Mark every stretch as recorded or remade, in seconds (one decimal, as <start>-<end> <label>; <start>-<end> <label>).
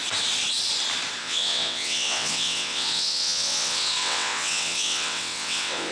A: 0.0-1.2 recorded; 1.2-5.9 remade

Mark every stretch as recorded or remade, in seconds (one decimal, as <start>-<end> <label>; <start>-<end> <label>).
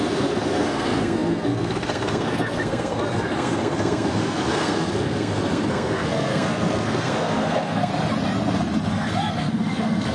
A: 0.0-7.9 remade; 7.9-8.9 recorded; 8.9-10.1 remade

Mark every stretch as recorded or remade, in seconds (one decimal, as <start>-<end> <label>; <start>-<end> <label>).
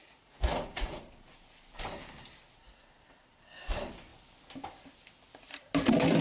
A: 0.0-1.0 remade; 1.0-6.2 recorded